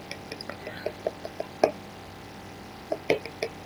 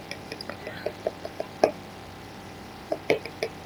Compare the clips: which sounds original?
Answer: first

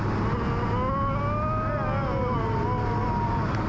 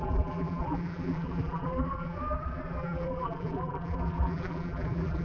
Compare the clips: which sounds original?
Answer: first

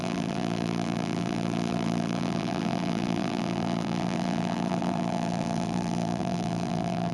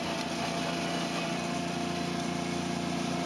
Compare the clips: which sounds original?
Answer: second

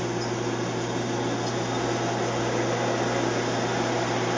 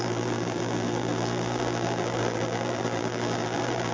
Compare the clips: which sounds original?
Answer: first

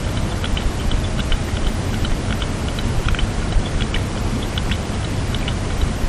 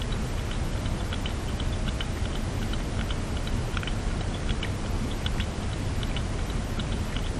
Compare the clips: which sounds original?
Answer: second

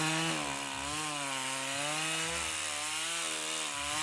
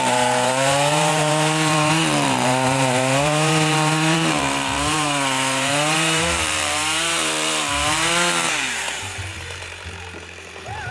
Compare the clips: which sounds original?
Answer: first